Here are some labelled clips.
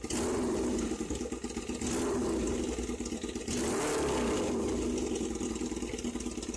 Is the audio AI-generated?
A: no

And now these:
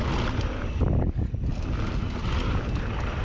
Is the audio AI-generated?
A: no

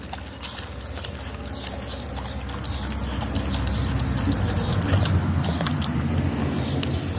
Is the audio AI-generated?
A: no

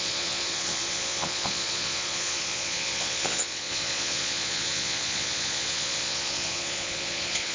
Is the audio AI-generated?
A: yes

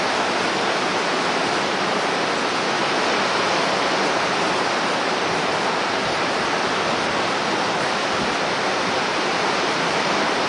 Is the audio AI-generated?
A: no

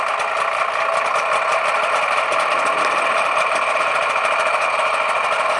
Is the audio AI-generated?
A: no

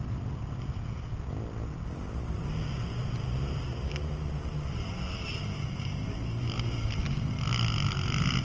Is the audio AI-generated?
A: no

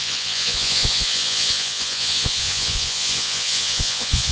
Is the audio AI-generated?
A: yes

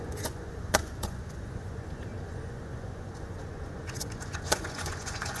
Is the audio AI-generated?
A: yes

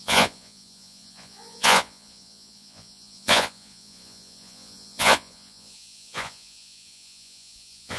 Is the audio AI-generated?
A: yes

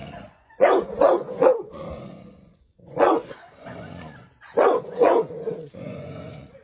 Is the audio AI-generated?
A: yes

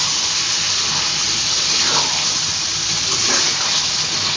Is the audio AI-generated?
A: no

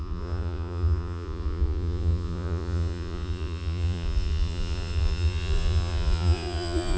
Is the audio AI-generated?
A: yes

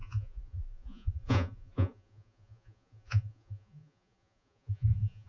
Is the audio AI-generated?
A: yes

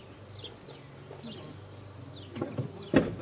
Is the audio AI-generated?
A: no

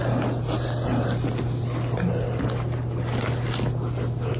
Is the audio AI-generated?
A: no